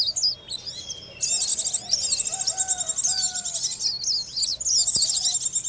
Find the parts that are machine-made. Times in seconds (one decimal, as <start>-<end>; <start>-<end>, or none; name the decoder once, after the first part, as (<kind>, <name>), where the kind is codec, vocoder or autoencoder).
none